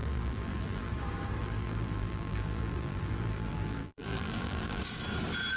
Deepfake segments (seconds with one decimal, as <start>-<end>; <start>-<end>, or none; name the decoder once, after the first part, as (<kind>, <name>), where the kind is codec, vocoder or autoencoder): 0.0-0.9 (vocoder, BigVGAN v2); 1.4-4.8